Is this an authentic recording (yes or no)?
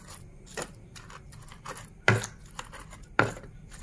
yes